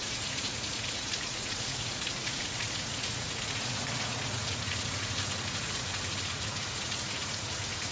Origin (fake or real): fake